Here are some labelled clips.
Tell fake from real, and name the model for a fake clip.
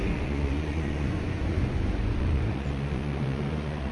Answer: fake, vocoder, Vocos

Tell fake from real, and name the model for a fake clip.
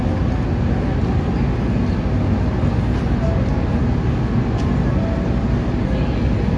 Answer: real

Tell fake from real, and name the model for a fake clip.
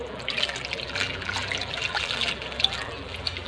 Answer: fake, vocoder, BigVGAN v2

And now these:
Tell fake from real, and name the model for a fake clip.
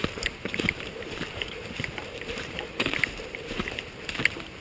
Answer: fake, vocoder, BigVGAN v2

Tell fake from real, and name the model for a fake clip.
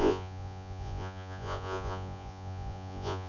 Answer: fake, vocoder, Vocos